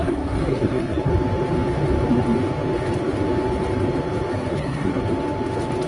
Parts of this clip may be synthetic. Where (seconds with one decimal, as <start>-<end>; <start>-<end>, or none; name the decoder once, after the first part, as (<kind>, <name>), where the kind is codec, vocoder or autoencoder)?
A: 0.0-1.1 (codec, SNAC); 4.5-5.0

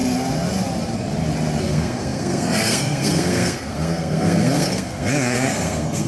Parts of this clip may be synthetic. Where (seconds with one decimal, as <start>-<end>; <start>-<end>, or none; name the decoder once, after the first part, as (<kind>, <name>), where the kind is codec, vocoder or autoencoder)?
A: 1.6-6.1 (codec, SNAC)